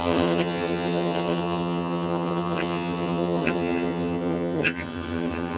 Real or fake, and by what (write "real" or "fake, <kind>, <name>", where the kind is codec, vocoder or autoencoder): fake, vocoder, HiFi-GAN